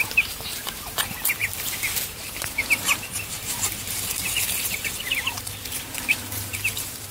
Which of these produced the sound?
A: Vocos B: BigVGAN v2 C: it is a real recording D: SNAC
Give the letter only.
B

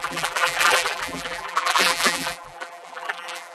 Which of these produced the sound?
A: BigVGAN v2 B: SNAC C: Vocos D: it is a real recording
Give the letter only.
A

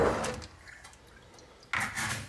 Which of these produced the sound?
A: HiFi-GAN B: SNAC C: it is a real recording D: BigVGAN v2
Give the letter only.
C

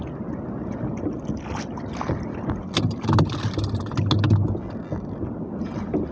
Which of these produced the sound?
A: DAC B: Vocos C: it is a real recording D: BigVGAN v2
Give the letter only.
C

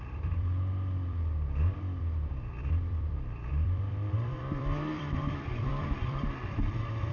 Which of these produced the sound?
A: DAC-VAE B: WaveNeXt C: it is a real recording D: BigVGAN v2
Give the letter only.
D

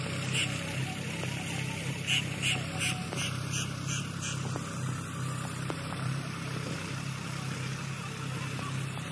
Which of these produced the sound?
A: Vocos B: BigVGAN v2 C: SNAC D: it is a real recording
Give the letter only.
B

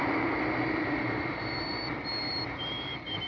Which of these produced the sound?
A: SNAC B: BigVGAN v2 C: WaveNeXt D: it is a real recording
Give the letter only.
B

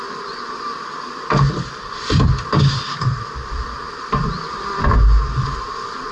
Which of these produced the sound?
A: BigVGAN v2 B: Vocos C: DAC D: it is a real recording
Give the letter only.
A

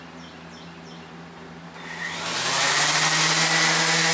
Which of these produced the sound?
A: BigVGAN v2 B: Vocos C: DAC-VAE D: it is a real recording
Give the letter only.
D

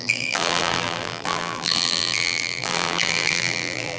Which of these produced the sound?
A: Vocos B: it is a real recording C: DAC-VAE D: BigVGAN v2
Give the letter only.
D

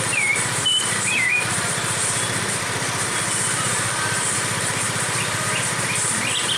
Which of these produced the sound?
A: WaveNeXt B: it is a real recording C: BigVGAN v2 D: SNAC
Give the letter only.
C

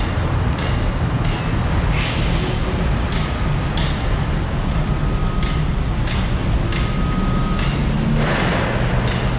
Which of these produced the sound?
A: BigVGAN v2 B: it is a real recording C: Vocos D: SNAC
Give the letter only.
B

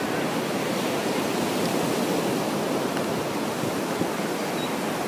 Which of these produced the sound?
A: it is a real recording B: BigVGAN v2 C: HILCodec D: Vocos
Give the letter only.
A